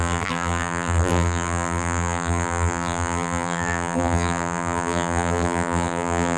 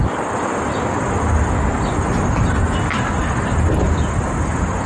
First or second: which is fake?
first